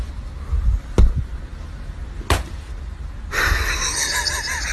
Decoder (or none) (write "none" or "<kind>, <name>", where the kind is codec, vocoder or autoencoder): none